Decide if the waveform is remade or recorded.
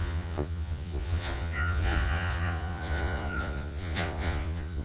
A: remade